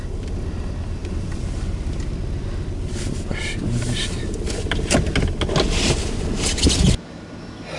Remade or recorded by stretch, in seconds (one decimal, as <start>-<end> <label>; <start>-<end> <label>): 0.0-1.0 recorded; 1.0-2.0 remade; 2.0-3.3 recorded; 3.3-4.0 remade; 4.0-7.8 recorded